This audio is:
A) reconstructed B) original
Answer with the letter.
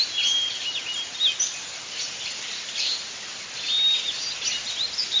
B